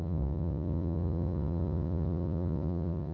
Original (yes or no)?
no